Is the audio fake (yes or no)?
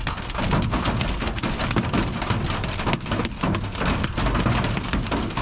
no